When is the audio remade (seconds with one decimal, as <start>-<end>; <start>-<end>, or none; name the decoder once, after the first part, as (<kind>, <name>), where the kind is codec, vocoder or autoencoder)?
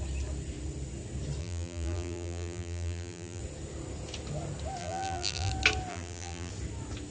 1.4-3.4 (vocoder, BigVGAN v2); 4.8-5.5; 5.9-6.5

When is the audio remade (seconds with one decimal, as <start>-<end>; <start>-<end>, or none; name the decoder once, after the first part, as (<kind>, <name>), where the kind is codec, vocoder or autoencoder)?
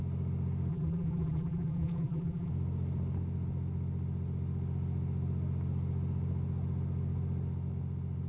0.7-2.5 (vocoder, BigVGAN v2)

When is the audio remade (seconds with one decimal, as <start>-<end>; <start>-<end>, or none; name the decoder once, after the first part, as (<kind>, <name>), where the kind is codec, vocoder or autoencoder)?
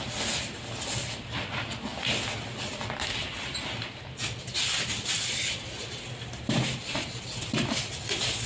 none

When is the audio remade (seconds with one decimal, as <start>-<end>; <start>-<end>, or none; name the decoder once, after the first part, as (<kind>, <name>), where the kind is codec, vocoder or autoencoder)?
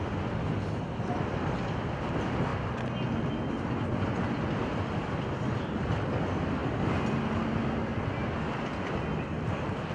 none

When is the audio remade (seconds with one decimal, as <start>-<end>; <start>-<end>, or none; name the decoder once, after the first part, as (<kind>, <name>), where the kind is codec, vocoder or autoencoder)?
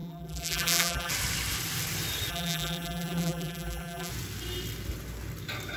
0.0-1.1 (vocoder, BigVGAN v2); 2.3-4.1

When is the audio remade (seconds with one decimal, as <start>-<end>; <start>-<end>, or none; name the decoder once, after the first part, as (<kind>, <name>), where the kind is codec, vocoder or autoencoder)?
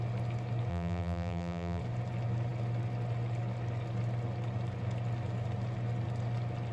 0.7-1.8 (vocoder, BigVGAN v2)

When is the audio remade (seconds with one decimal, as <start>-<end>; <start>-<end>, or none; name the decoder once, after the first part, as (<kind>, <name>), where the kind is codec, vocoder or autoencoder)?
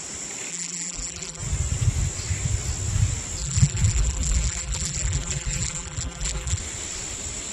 0.5-1.4 (vocoder, BigVGAN v2); 3.4-6.6